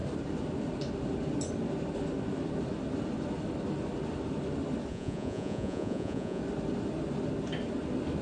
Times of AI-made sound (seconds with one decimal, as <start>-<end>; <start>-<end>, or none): 4.9-6.4